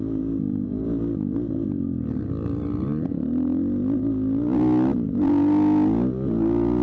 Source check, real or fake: real